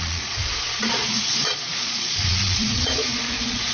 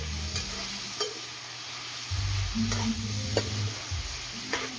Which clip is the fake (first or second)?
first